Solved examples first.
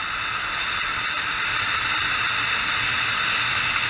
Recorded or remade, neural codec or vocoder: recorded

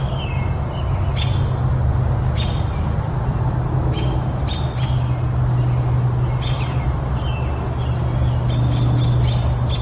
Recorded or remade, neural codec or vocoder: recorded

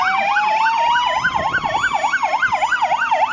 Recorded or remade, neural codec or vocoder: recorded